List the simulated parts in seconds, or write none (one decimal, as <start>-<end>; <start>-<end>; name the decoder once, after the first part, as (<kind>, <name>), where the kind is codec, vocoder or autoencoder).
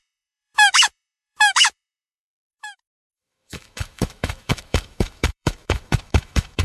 0.0-6.6 (autoencoder, DAC-VAE)